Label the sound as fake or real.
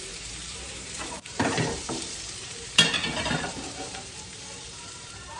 fake